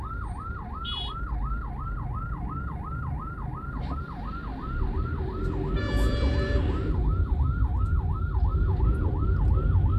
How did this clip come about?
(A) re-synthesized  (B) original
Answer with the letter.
B